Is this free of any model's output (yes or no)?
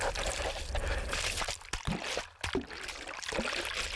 yes